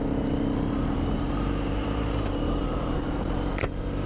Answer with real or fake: fake